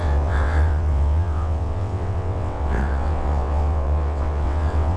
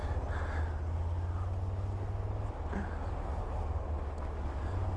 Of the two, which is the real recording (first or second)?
second